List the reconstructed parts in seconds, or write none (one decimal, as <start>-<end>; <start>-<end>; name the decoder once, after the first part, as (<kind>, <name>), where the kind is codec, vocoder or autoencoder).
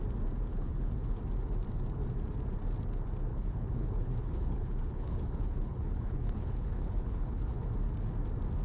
0.5-1.2 (codec, HILCodec); 3.3-7.7